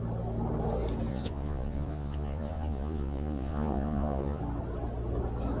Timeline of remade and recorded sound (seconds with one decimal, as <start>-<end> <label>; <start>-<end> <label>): 0.0-1.1 recorded; 1.1-4.4 remade; 4.4-5.6 recorded